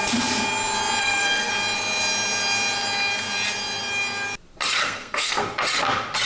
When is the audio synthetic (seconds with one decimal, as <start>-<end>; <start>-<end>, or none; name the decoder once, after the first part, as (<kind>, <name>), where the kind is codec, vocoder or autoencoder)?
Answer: 1.0-1.5 (codec, SNAC); 4.8-5.4